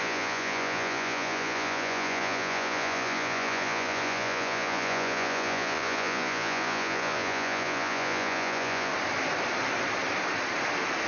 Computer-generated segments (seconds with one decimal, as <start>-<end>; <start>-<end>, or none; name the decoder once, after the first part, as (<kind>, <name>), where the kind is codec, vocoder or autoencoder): 0.0-8.9 (vocoder, Vocos)